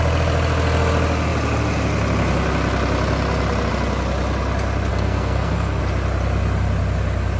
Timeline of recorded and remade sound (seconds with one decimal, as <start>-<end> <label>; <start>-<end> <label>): 0.0-4.9 recorded; 4.9-5.8 remade; 5.8-7.4 recorded